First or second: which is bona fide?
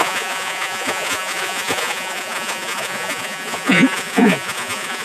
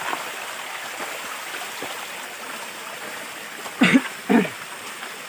second